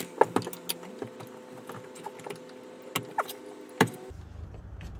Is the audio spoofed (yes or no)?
no